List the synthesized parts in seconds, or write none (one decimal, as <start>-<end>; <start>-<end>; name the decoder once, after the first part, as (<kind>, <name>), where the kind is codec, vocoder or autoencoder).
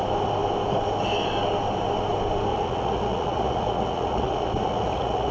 2.5-5.3 (vocoder, Vocos)